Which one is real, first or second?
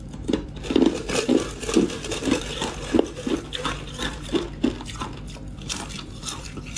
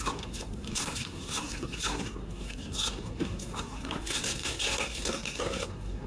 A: first